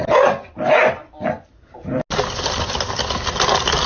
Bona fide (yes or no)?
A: yes